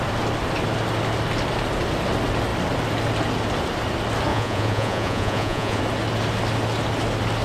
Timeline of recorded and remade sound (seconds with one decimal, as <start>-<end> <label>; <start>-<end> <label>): 0.0-4.3 recorded; 4.3-5.8 remade; 5.8-7.4 recorded